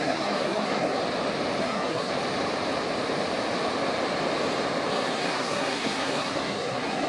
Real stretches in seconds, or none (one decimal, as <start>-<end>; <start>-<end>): 1.0-1.6; 2.1-4.9